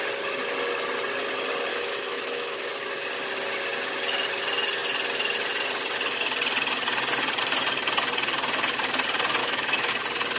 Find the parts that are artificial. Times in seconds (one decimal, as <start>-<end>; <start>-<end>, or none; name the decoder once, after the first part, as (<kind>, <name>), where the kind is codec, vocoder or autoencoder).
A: 1.7-2.7 (autoencoder, DAC-VAE); 9.4-9.9